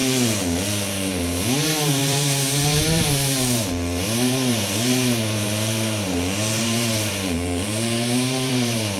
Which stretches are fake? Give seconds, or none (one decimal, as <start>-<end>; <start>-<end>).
0.9-9.0